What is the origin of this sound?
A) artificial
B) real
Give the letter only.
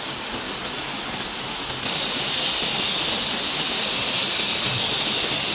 B